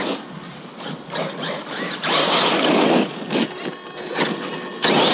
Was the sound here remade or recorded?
recorded